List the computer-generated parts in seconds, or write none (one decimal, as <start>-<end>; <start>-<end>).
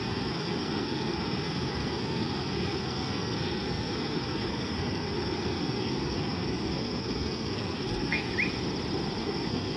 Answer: 0.0-8.3; 9.2-9.8